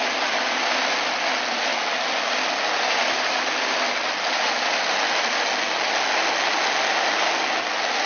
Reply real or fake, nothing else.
real